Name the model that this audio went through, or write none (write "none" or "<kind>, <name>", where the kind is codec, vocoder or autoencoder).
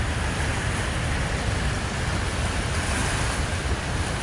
none